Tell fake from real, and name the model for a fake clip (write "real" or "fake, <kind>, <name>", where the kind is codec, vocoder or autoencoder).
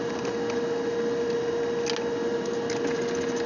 real